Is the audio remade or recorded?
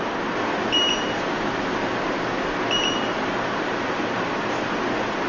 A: recorded